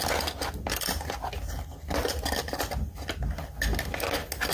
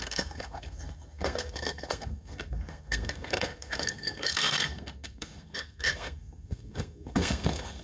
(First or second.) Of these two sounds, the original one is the first